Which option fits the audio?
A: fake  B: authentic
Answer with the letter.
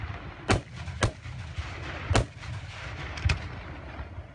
B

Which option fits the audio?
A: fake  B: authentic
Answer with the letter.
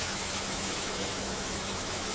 A